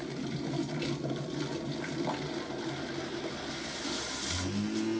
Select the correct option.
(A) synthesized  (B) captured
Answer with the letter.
B